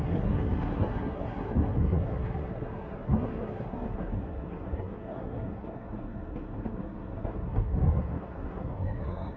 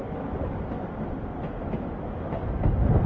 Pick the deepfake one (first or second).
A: first